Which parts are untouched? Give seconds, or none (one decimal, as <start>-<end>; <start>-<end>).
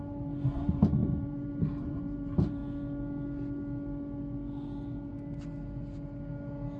2.6-6.8